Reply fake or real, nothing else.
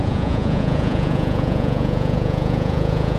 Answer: fake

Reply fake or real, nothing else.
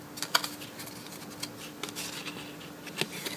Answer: real